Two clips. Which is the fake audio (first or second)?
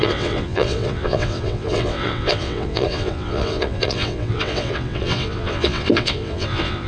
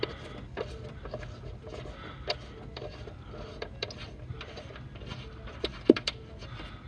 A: first